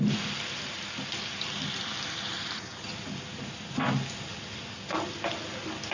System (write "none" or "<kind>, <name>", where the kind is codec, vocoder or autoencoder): none